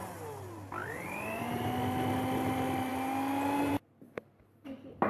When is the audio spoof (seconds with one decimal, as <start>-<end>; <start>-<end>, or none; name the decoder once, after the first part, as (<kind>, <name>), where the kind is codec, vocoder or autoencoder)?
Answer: 0.8-1.7 (vocoder, BigVGAN v2)